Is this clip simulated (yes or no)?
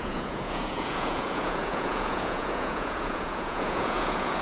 yes